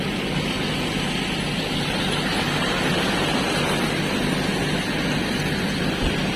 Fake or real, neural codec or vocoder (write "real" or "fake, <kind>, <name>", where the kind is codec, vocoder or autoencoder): real